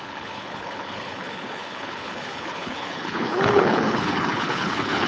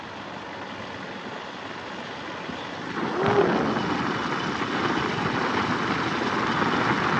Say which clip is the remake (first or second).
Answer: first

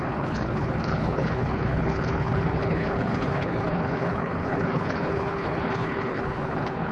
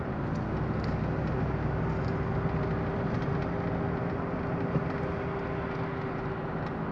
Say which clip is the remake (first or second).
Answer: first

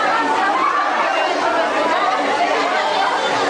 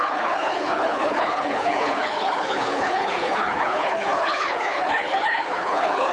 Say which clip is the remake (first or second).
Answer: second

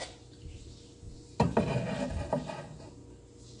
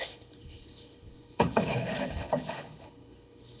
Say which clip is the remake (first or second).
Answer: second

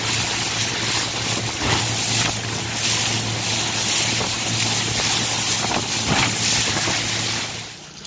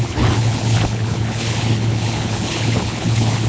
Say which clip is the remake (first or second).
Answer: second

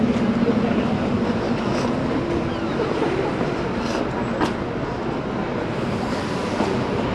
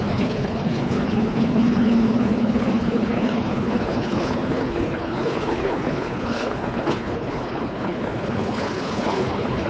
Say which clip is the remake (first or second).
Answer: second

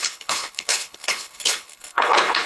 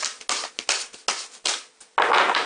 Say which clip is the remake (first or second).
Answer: first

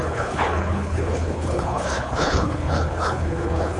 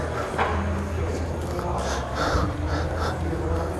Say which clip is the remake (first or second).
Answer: first